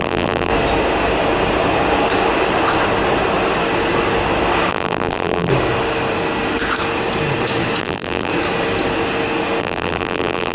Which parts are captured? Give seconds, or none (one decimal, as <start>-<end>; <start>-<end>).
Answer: 0.5-4.7; 5.5-7.8; 8.3-9.6